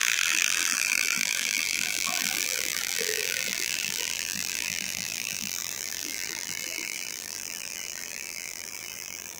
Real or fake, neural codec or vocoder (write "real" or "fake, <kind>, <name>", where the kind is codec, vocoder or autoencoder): fake, vocoder, BigVGAN v2